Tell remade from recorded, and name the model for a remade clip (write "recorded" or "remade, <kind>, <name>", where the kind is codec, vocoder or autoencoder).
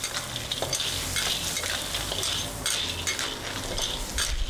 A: recorded